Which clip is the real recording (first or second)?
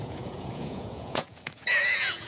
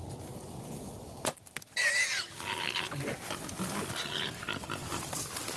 second